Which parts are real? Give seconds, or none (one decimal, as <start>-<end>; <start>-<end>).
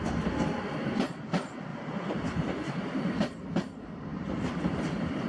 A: 0.0-1.7; 3.5-4.1